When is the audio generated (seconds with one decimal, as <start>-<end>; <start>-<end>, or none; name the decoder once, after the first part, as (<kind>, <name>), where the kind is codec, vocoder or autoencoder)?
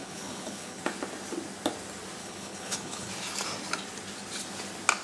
0.0-0.8 (codec, HILCodec); 2.2-3.1